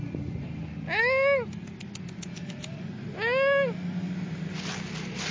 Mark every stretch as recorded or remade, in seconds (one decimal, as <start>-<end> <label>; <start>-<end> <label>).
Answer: 0.0-5.3 recorded